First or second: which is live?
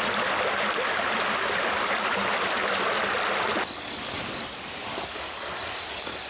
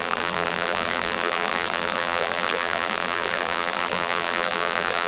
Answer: first